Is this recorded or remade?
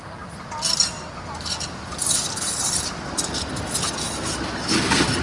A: recorded